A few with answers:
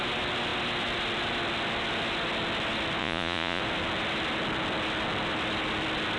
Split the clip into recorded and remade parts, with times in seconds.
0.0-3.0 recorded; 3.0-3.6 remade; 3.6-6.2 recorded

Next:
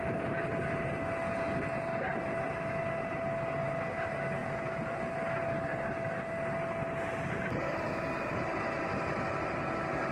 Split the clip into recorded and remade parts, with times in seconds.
0.0-4.4 recorded; 4.4-5.0 remade; 5.0-10.1 recorded

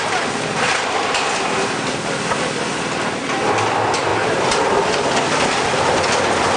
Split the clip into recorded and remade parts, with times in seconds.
0.0-4.1 recorded; 4.1-5.4 remade; 5.4-6.6 recorded